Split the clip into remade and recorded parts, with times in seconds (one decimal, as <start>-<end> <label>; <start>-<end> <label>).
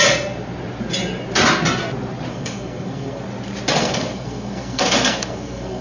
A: 0.0-2.3 recorded; 2.3-3.2 remade; 3.2-3.8 recorded; 3.8-5.8 remade